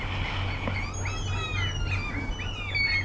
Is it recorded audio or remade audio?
recorded